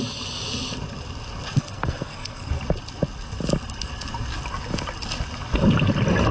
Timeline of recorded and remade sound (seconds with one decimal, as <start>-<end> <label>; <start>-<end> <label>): 0.0-1.5 recorded; 1.5-2.5 remade; 2.5-6.3 recorded